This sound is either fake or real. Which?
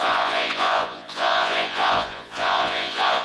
fake